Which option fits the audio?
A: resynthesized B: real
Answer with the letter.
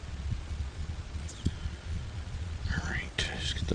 A